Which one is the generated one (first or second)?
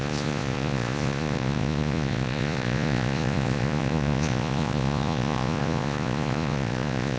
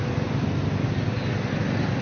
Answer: first